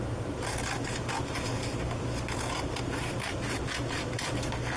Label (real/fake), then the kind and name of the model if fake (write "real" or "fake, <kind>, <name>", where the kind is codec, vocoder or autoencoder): real